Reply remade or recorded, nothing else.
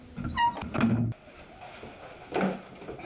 recorded